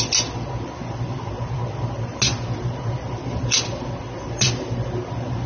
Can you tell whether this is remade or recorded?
recorded